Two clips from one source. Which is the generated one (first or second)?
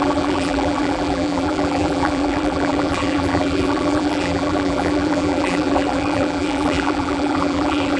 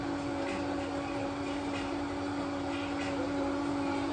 first